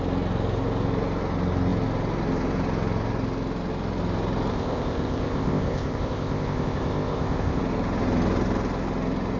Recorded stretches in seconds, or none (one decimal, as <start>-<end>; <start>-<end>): 0.0-4.5; 7.6-9.4